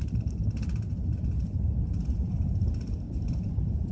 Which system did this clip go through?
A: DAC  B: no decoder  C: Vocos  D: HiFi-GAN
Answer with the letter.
B